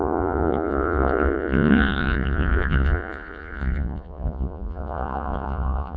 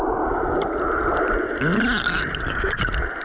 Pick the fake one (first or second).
first